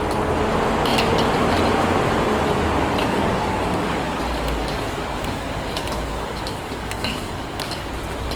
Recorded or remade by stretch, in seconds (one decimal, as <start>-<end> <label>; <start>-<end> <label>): 0.0-3.0 recorded; 3.0-7.9 remade; 7.9-8.4 recorded